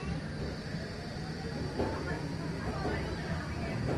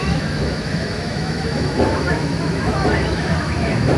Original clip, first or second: first